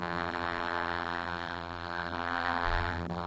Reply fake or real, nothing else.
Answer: fake